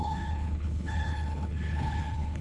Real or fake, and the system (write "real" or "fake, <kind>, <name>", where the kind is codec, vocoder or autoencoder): fake, codec, HILCodec